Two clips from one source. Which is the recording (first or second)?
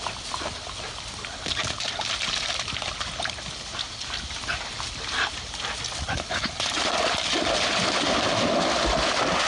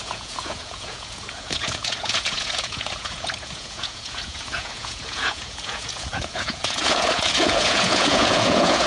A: first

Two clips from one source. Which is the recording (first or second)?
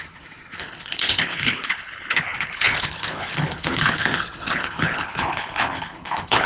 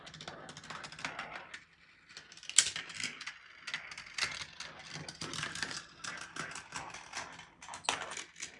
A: second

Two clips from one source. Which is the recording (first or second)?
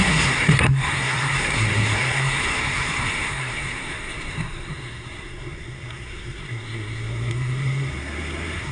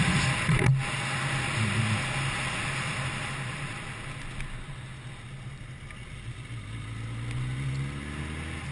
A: second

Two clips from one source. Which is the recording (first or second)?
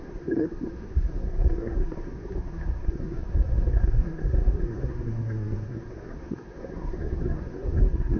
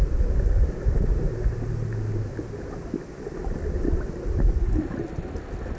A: second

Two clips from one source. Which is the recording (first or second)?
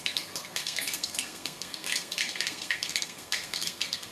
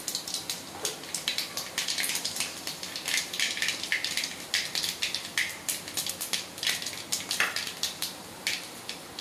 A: second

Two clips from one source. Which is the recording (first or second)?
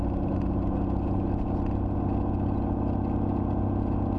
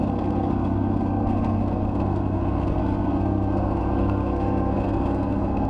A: first